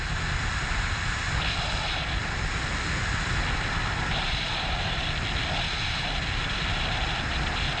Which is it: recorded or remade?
recorded